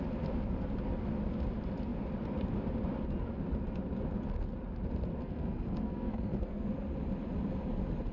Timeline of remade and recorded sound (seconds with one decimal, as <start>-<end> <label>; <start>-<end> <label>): 0.0-5.2 recorded; 5.2-6.7 remade; 6.7-8.1 recorded